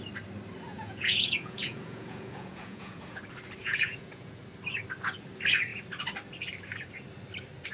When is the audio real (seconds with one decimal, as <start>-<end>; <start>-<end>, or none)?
0.0-0.7; 3.2-3.6; 4.4-7.7